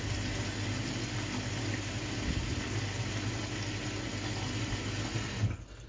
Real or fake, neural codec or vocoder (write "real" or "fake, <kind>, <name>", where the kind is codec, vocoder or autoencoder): real